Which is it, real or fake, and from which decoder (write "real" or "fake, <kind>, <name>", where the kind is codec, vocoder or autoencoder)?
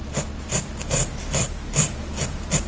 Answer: real